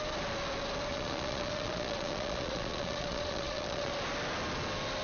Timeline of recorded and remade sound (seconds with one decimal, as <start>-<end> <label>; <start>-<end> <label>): 0.0-0.9 recorded; 0.9-3.9 remade; 3.9-5.0 recorded